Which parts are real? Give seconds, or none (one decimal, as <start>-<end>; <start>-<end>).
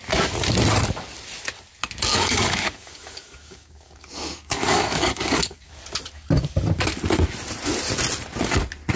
0.0-2.1; 5.8-9.0